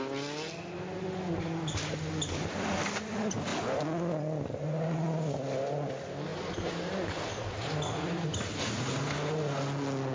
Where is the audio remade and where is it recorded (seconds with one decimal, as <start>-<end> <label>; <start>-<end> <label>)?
0.0-10.1 recorded